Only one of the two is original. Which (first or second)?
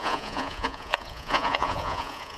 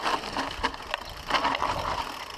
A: second